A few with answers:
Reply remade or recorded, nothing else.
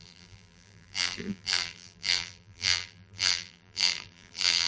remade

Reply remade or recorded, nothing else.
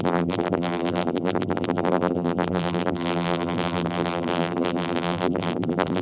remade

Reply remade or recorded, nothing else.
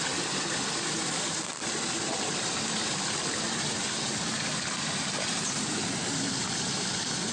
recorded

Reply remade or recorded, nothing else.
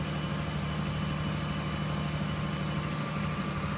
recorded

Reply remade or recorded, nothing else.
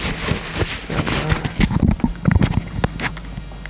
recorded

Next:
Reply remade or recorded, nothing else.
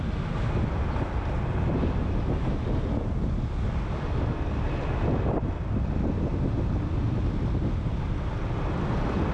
recorded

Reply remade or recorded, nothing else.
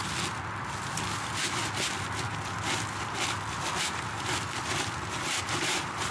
recorded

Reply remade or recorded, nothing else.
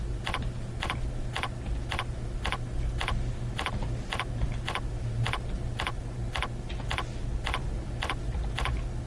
recorded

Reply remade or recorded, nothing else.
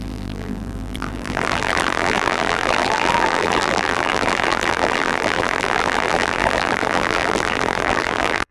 remade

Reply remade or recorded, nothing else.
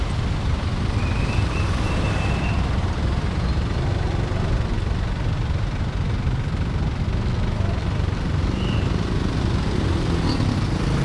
recorded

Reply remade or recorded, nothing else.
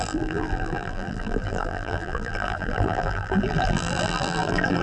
remade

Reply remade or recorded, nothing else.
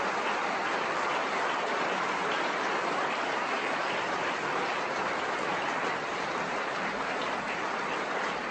remade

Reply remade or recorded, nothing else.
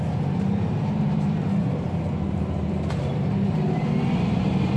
remade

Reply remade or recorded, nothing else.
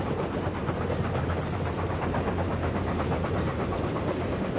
remade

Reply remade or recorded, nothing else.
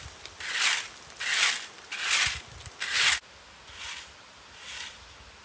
recorded